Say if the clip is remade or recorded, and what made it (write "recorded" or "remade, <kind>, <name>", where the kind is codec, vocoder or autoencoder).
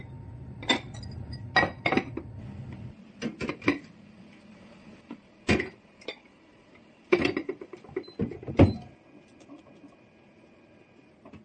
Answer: recorded